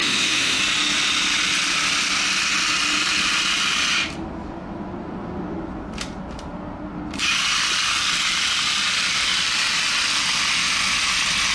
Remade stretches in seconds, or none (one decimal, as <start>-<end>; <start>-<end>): 0.0-0.6

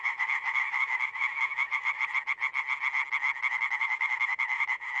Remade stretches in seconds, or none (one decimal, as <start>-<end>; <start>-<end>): 0.0-2.0; 3.8-5.0

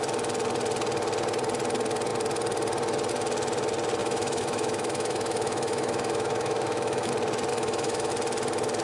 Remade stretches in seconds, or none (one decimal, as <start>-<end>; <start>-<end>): 4.0-7.1; 7.5-8.1

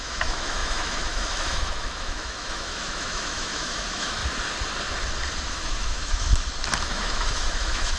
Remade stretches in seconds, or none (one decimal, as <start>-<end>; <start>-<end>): 0.0-4.2; 5.5-6.3; 6.8-8.0